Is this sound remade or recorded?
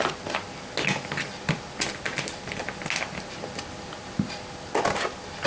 recorded